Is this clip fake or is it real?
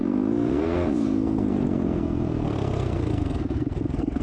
fake